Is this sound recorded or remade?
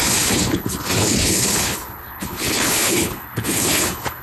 remade